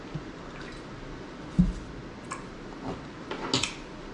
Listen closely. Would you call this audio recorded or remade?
recorded